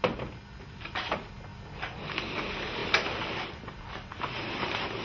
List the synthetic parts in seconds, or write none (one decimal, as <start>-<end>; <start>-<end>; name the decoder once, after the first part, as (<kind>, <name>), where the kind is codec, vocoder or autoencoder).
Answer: none